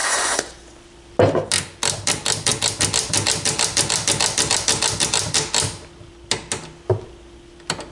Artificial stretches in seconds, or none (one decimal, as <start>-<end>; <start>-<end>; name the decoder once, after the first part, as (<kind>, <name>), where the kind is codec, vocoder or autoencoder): 0.0-0.5 (vocoder, Vocos)